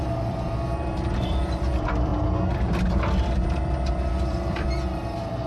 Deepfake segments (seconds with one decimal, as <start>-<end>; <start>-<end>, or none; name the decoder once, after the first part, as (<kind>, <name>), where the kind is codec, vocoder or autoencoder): 0.0-2.1 (vocoder, BigVGAN v2); 4.1-5.5